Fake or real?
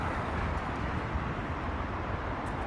fake